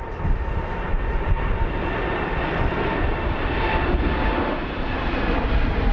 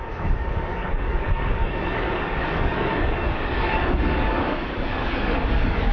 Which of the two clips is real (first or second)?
first